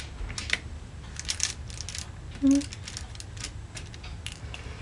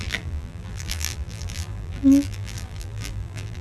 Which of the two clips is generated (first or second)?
second